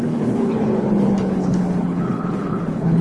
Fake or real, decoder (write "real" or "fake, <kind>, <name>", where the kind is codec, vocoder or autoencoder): fake, codec, HILCodec